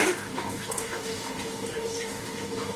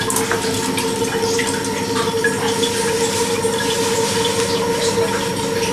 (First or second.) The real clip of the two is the second